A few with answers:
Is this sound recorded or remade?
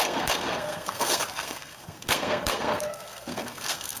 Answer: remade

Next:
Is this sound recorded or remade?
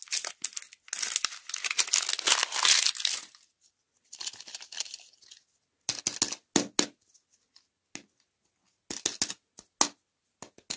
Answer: recorded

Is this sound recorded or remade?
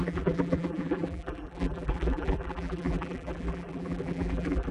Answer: remade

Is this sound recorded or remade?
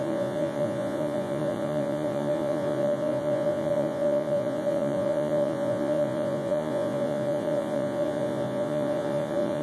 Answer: remade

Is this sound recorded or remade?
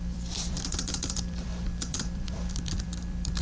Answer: remade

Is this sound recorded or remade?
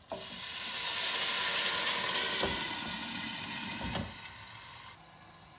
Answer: recorded